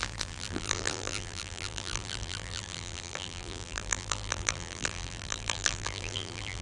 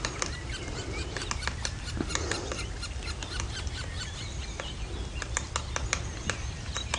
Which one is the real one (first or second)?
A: second